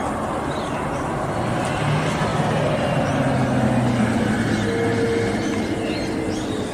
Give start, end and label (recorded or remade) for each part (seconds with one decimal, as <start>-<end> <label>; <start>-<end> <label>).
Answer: 0.0-6.7 recorded